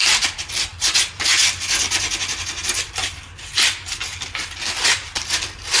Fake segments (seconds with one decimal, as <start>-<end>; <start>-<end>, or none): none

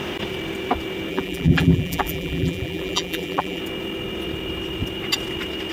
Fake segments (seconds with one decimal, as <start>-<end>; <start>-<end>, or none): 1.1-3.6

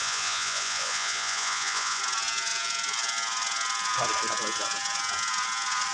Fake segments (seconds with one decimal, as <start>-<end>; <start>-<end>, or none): 0.0-2.0